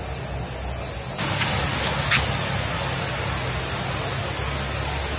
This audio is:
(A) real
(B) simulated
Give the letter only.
A